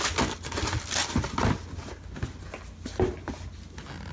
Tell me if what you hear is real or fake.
real